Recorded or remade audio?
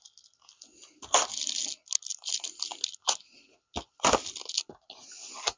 recorded